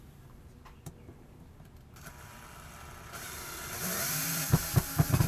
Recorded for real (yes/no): no